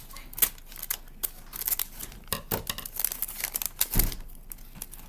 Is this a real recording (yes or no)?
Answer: yes